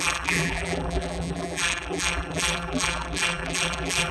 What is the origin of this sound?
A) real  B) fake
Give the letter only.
B